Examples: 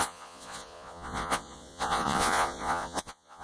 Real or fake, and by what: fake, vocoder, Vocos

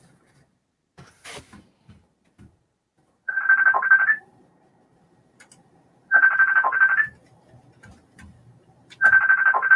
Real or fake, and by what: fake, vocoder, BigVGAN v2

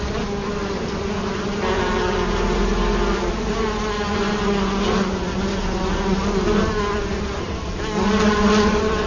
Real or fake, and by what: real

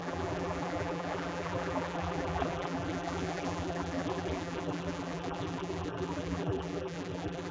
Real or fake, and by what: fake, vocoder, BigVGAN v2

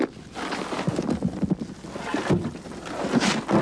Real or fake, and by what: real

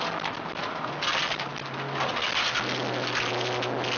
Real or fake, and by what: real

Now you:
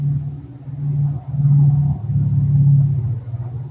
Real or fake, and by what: real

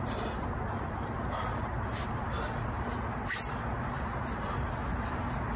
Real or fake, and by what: fake, vocoder, BigVGAN v2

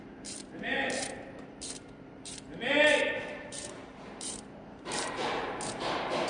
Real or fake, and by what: fake, vocoder, BigVGAN v2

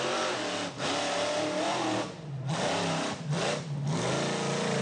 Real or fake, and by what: real